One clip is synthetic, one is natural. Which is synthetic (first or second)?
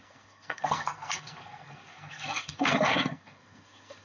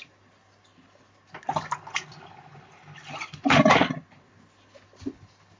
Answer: first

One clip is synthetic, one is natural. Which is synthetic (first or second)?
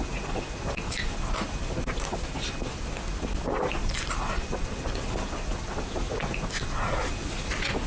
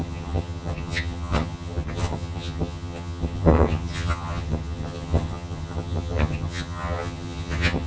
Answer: second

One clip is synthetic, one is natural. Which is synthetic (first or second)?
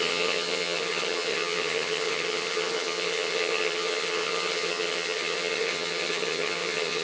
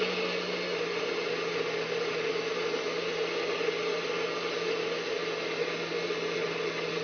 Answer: first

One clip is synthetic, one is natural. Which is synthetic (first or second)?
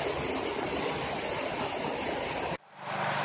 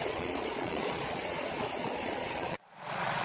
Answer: second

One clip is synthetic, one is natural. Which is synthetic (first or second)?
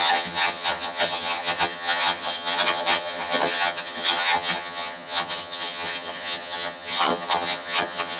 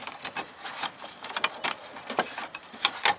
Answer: first